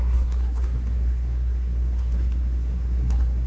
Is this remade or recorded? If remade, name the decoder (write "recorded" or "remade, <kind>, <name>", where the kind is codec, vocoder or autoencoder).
remade, codec, SNAC